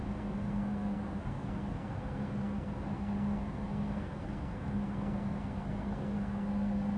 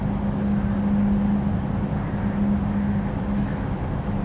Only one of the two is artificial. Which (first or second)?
first